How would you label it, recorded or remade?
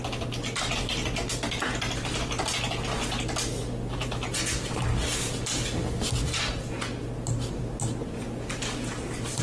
recorded